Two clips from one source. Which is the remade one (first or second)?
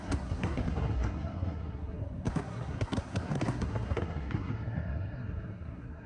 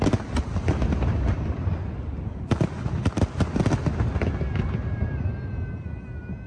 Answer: first